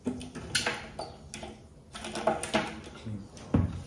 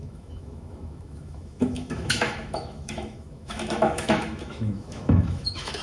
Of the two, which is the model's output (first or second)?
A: second